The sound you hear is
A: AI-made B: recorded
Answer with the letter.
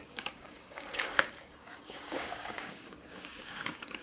A